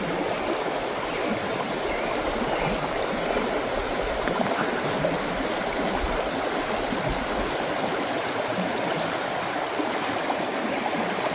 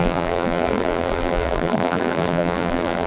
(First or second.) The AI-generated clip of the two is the second